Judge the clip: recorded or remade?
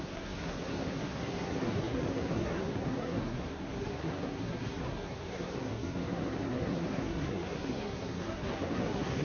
remade